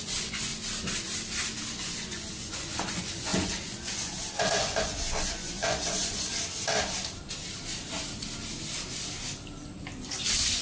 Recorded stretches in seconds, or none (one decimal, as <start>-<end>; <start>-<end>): 0.5-1.7; 6.3-10.6

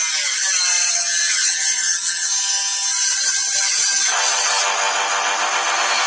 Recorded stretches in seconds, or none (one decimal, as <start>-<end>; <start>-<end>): 0.0-0.9; 2.3-6.1

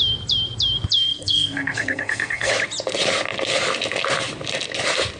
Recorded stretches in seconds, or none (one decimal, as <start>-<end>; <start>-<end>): 0.0-1.1; 2.5-5.2